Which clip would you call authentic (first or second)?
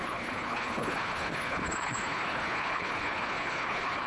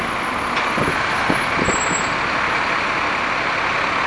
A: second